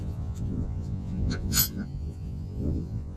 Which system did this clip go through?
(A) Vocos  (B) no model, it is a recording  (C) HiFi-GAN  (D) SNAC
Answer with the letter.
A